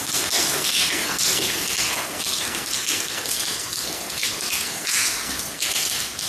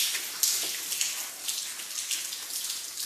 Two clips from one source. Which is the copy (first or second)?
first